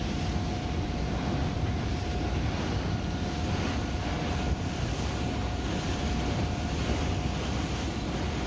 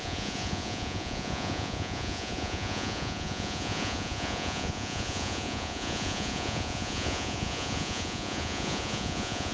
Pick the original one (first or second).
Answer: first